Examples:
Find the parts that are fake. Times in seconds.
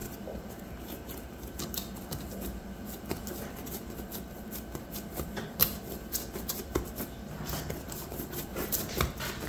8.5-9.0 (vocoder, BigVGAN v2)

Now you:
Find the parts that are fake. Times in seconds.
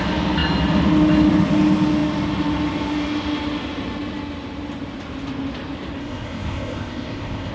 6.0-7.5 (codec, ZipCodec)